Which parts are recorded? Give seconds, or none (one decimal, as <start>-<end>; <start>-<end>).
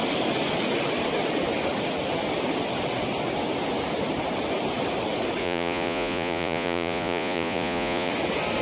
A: 0.0-5.4; 8.1-8.6